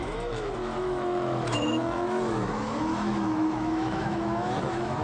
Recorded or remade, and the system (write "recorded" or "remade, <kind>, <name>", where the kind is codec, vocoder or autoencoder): remade, autoencoder, DAC-VAE